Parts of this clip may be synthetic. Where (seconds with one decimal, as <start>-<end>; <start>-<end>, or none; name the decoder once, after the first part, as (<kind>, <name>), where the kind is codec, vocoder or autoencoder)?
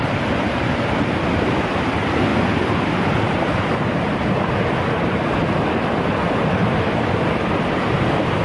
none